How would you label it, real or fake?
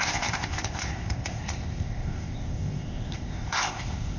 fake